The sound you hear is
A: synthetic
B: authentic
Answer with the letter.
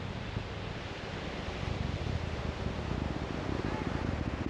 B